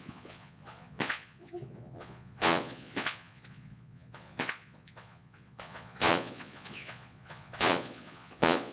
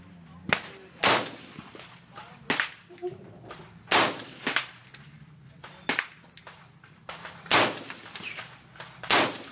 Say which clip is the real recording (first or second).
second